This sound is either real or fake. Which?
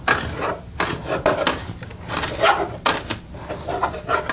real